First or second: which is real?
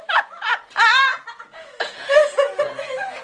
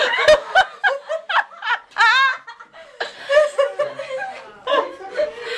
second